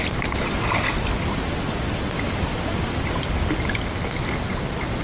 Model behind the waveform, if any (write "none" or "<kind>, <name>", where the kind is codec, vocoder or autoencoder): none